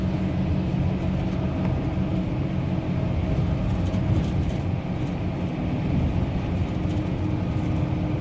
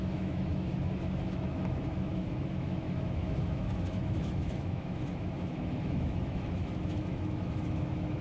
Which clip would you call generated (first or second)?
second